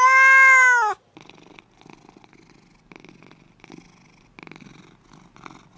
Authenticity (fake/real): real